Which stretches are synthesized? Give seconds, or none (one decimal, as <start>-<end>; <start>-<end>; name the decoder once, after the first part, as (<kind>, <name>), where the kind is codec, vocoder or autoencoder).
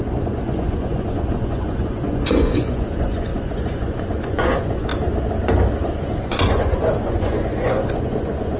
0.0-4.9 (vocoder, Vocos); 6.2-8.6